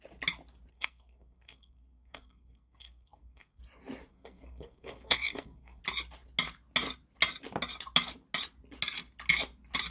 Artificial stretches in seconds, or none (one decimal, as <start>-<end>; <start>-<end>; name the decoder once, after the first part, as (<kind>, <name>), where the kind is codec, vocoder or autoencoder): 0.7-3.6 (codec, SNAC); 4.1-5.8